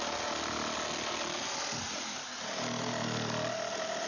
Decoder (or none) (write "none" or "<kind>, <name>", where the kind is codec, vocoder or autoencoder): none